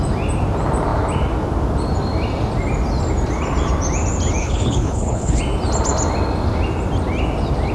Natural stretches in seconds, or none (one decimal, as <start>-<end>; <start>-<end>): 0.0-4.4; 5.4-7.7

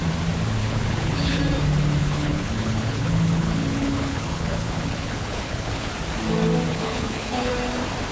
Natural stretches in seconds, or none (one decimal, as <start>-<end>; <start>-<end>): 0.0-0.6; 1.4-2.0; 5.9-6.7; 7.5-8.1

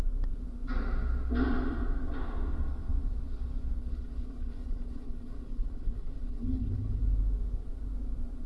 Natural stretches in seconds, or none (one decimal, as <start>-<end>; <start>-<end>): 0.0-3.8; 7.0-8.5

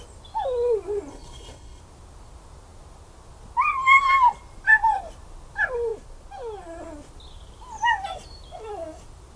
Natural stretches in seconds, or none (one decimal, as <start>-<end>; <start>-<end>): 0.0-1.1; 1.8-9.4